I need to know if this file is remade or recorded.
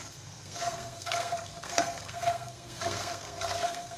remade